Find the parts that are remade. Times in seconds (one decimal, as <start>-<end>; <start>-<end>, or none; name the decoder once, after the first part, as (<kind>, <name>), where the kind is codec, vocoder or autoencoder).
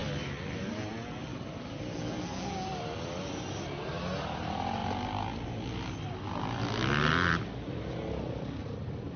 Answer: none